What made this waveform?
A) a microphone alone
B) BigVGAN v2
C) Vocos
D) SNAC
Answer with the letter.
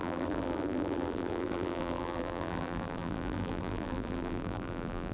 B